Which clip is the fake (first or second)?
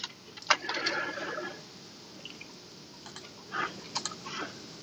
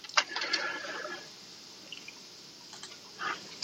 second